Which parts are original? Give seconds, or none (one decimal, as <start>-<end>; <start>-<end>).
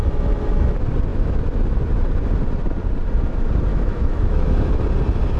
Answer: 0.0-3.7; 4.8-5.4